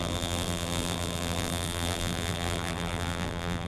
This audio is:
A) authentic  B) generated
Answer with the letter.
B